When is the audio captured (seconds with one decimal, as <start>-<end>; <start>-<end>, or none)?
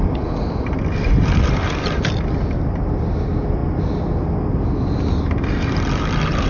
0.0-6.5